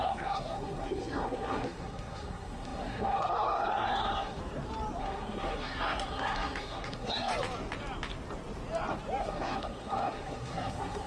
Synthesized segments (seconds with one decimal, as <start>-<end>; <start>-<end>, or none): 0.0-4.4; 5.0-7.3; 9.2-11.1